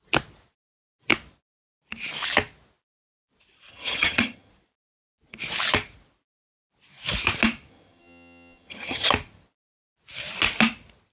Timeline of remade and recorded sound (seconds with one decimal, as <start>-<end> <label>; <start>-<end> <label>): 0.0-3.7 recorded; 3.7-4.5 remade; 4.5-7.7 recorded; 7.7-9.1 remade; 9.1-11.1 recorded